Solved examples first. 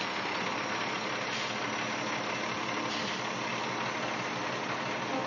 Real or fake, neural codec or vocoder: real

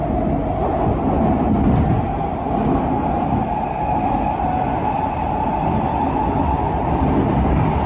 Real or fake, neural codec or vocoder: real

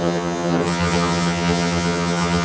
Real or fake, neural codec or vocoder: fake, vocoder, HiFi-GAN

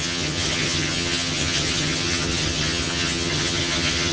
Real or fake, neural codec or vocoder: fake, vocoder, HiFi-GAN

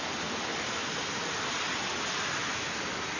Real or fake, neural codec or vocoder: real